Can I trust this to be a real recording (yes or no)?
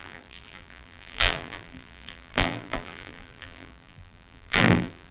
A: no